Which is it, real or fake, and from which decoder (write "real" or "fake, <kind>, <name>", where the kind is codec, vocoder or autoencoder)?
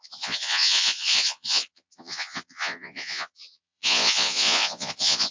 fake, vocoder, Vocos